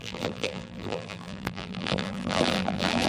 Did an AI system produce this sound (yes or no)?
yes